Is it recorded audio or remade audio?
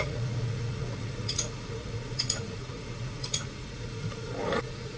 remade